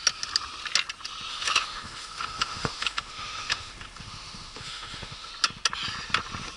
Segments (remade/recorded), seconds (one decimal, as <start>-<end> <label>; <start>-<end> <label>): 0.0-1.3 recorded; 1.3-5.3 remade; 5.3-6.6 recorded